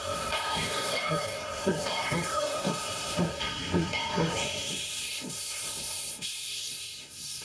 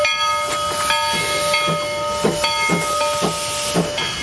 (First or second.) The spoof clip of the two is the first